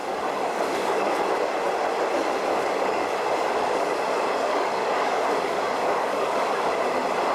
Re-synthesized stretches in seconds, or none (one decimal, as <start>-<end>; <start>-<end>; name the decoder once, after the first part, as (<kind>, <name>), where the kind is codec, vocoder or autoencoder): 0.0-1.2 (codec, DAC); 2.5-6.7